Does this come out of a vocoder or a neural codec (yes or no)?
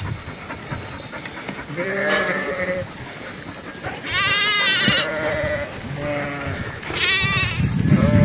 no